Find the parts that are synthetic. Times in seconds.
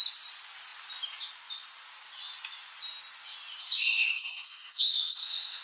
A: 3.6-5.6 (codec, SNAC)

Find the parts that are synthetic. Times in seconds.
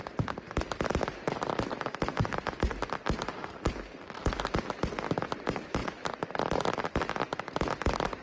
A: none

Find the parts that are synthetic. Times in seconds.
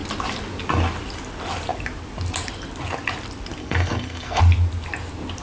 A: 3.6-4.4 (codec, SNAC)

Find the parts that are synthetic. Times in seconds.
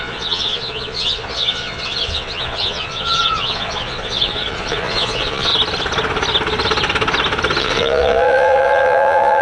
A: 0.0-5.5 (vocoder, Vocos); 7.6-9.4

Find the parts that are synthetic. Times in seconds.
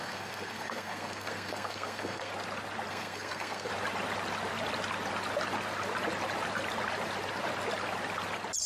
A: 0.0-2.3 (codec, SNAC); 2.9-3.7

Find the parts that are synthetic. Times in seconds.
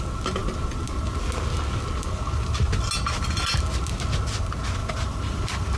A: 4.8-5.8 (vocoder, BigVGAN v2)